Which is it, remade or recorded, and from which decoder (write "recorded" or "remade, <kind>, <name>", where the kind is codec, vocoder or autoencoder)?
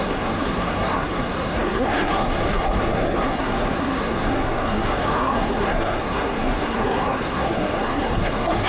remade, codec, SNAC